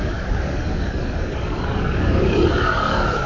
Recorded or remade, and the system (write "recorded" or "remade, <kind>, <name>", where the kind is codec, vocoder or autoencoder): remade, codec, DAC